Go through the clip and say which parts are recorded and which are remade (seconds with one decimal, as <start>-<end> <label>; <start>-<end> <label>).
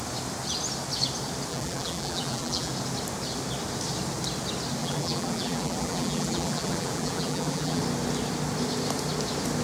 0.0-1.5 recorded; 1.5-2.7 remade; 2.7-4.8 recorded; 4.8-7.8 remade; 7.8-9.6 recorded